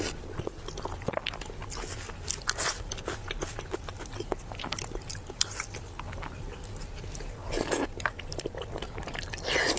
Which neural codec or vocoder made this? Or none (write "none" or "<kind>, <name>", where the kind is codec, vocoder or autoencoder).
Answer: none